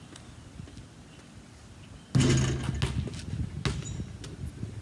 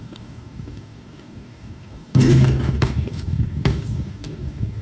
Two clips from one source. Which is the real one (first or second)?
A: first